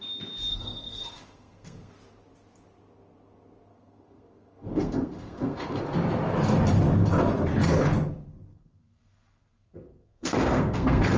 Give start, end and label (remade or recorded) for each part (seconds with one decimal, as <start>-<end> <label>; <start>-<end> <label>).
0.0-0.5 recorded; 0.5-1.9 remade; 1.9-3.7 recorded; 3.7-5.8 remade; 5.8-8.5 recorded; 8.5-11.2 remade